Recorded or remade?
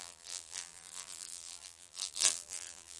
remade